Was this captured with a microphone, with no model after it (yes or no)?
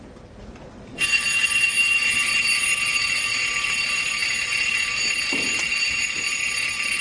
no